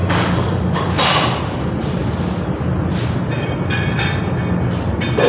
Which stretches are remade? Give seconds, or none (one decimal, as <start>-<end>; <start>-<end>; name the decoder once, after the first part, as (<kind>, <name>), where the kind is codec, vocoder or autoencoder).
0.0-0.9 (codec, DAC)